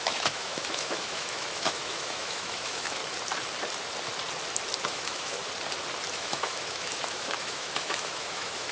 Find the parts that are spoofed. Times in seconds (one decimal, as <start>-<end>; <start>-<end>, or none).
0.0-3.0; 4.8-5.4; 6.1-8.7